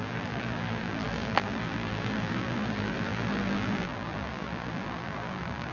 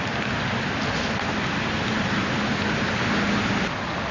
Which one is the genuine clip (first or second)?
second